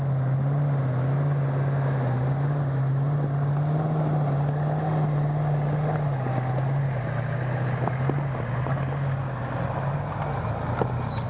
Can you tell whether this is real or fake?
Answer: real